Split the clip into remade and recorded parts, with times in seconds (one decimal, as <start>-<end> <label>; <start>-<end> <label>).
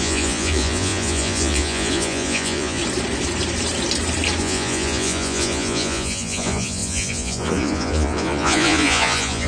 0.0-2.8 remade; 2.8-4.4 recorded; 4.4-9.5 remade